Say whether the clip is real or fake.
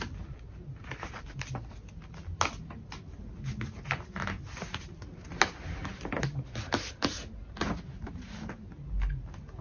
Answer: real